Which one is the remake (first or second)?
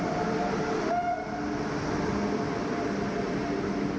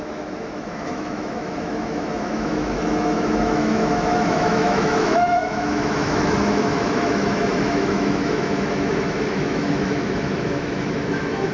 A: second